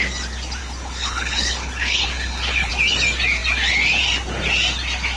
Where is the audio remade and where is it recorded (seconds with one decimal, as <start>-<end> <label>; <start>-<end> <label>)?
0.0-0.6 recorded; 0.6-2.7 remade; 2.7-5.2 recorded